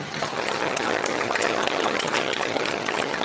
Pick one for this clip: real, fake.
fake